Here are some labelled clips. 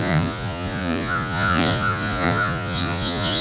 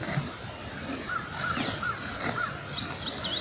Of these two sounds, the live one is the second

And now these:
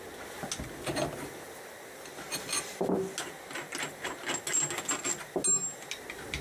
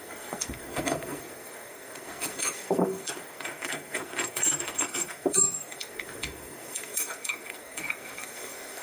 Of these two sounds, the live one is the first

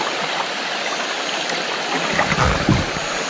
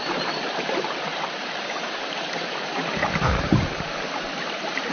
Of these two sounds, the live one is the first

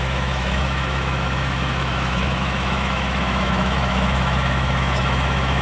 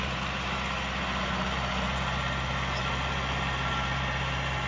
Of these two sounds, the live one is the second